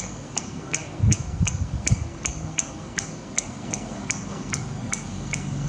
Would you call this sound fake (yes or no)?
yes